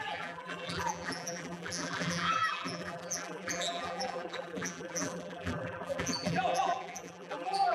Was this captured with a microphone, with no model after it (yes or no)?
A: no